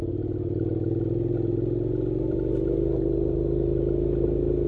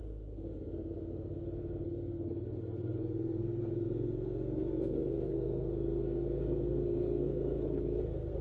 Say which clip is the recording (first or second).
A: first